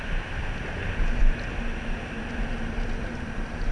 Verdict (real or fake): real